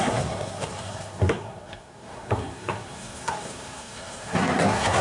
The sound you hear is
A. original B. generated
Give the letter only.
B